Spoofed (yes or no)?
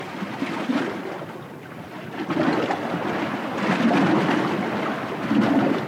no